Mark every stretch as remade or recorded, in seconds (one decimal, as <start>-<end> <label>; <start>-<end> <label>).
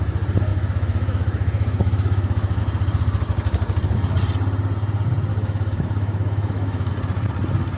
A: 0.0-0.5 recorded; 0.5-2.6 remade; 2.6-5.3 recorded; 5.3-6.9 remade; 6.9-7.8 recorded